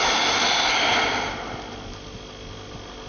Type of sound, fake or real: real